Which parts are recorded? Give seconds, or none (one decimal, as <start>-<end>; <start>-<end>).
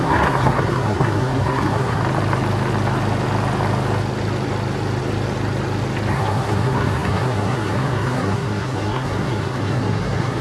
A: 2.0-6.1